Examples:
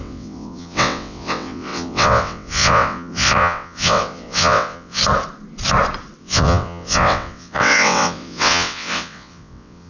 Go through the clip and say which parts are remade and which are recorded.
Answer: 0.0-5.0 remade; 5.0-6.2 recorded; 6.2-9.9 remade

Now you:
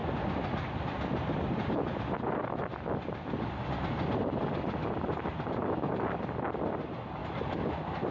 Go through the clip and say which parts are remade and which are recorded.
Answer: 0.0-8.1 recorded

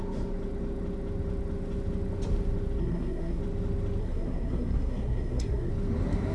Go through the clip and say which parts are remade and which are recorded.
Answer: 0.0-2.8 recorded; 2.8-3.4 remade; 3.4-4.0 recorded; 4.0-5.7 remade; 5.7-6.3 recorded

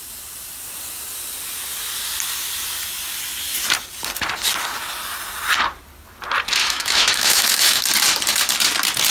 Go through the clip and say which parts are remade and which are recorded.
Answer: 0.0-6.6 recorded; 6.6-7.8 remade; 7.8-9.1 recorded

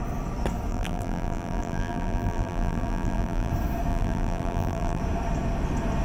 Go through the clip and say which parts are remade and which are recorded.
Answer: 0.0-0.7 recorded; 0.7-3.5 remade; 3.5-3.9 recorded; 3.9-5.0 remade; 5.0-6.0 recorded

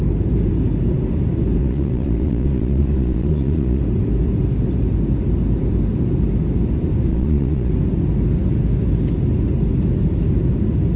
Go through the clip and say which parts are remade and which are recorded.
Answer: 0.0-1.6 recorded; 1.6-3.8 remade; 3.8-7.1 recorded; 7.1-7.7 remade; 7.7-11.0 recorded